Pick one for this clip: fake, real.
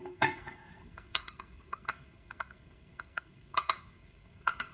fake